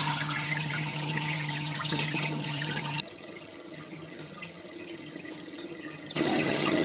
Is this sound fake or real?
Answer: fake